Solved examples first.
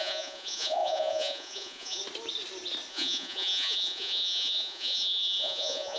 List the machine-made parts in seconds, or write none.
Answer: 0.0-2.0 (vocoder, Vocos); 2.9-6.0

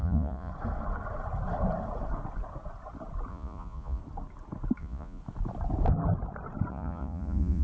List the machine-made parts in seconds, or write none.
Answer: 0.0-0.5 (vocoder, Vocos); 3.3-4.0; 4.8-5.2; 6.7-7.6

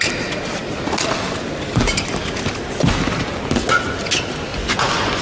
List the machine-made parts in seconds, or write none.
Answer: 4.5-5.2 (vocoder, Vocos)

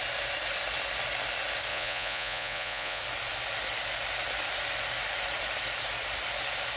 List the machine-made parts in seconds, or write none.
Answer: 1.7-3.0 (vocoder, Vocos)

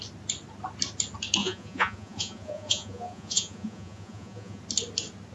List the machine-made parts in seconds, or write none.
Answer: 1.4-4.6 (vocoder, Vocos)